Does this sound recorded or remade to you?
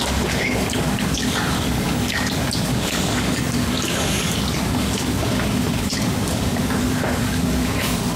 remade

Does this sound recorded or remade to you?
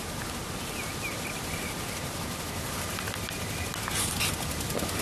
recorded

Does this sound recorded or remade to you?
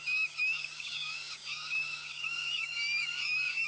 remade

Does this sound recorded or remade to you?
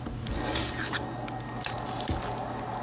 recorded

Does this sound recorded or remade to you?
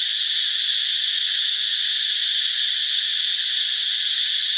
recorded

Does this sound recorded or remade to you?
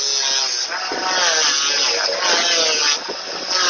recorded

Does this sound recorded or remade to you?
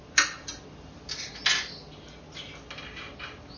recorded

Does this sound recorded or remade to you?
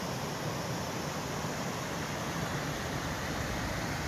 recorded